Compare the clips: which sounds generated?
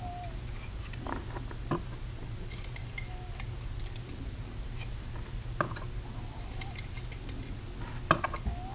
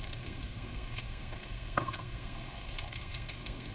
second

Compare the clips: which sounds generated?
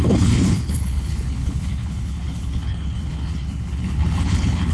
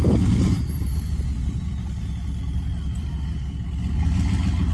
first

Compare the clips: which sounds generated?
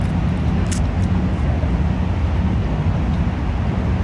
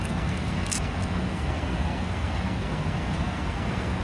second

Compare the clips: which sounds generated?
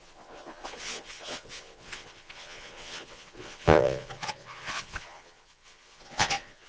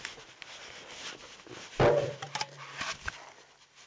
first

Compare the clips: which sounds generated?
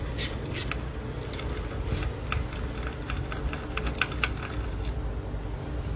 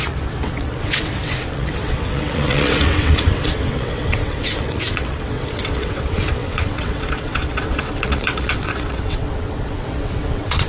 second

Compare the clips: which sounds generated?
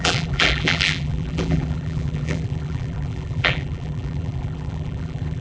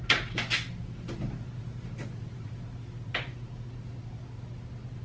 first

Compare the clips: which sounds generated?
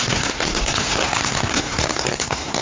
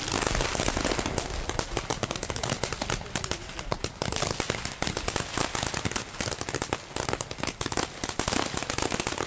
first